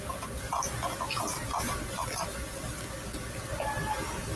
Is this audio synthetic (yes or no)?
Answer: no